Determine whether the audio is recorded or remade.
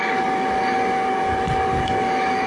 remade